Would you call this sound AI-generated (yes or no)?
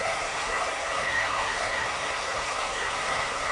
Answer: yes